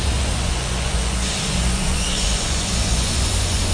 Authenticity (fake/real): fake